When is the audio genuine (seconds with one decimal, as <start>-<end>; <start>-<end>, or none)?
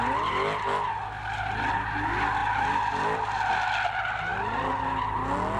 0.0-5.6